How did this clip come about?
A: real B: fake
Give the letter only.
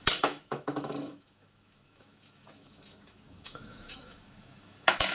B